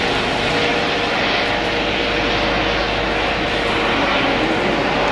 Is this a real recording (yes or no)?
yes